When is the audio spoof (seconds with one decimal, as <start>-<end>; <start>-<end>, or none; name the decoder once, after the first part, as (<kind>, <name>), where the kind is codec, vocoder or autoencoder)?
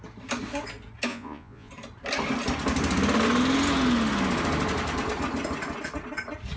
1.1-1.7 (vocoder, Vocos)